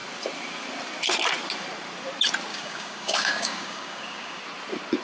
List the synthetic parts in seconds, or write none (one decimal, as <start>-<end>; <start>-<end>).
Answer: 2.5-4.4